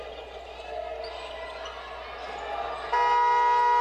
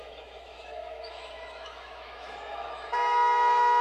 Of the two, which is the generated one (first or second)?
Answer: second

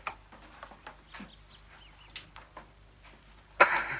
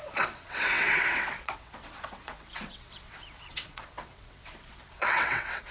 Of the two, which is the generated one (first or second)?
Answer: second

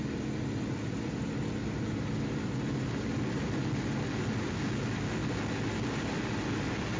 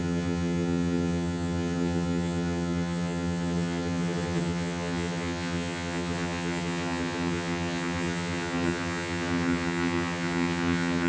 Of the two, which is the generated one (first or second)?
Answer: second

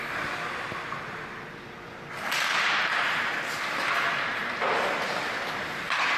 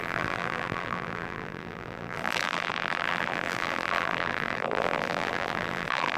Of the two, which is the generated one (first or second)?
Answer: second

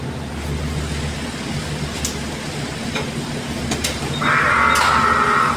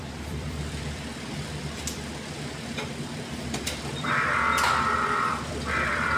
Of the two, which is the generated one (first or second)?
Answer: second